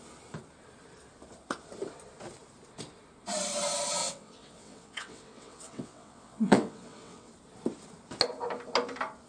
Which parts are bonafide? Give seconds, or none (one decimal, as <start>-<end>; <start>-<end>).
0.0-4.0; 7.3-9.3